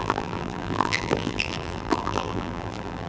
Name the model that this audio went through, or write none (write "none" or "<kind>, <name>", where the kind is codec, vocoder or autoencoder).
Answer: vocoder, BigVGAN v2